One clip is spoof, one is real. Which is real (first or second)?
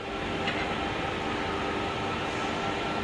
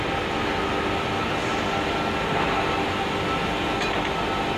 second